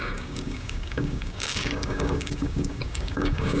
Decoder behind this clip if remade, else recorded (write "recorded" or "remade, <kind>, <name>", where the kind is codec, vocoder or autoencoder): remade, codec, DAC